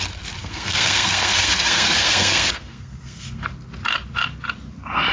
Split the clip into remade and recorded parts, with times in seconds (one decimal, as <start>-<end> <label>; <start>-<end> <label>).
0.0-0.4 recorded; 0.4-3.5 remade; 3.5-5.1 recorded